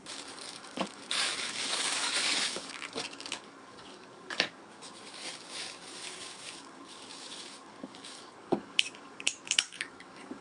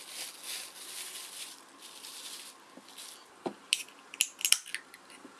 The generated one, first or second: first